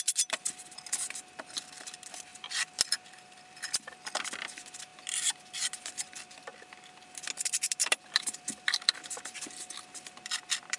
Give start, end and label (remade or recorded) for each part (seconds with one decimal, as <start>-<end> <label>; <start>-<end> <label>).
0.0-6.5 remade; 6.5-7.5 recorded; 7.5-10.8 remade